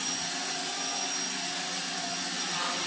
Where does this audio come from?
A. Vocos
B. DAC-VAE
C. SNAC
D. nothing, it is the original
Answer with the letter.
A